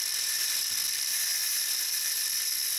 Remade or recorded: remade